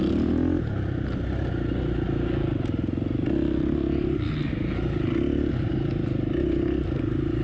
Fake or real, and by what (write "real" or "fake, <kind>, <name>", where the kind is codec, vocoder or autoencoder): real